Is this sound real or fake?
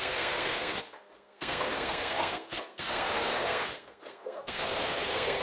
fake